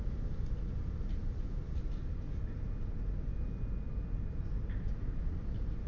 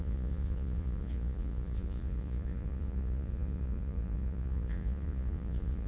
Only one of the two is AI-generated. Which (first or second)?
second